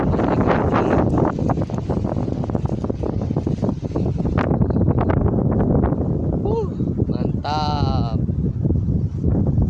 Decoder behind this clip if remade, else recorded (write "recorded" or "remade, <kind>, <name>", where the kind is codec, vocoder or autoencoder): recorded